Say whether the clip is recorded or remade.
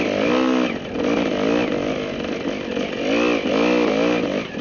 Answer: recorded